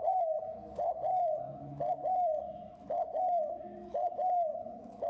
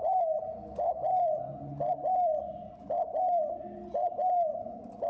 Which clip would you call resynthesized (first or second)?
first